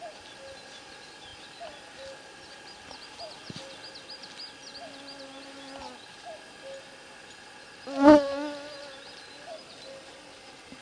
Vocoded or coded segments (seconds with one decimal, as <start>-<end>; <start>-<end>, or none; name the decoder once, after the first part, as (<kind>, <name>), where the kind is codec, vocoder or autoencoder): none